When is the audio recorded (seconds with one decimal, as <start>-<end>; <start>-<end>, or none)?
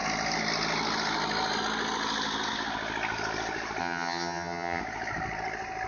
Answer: 0.0-3.8; 4.8-5.9